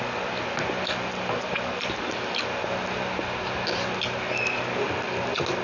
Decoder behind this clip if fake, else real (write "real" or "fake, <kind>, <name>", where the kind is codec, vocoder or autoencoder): real